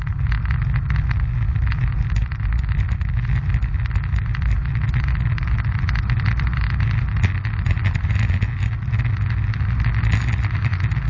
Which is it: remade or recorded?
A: recorded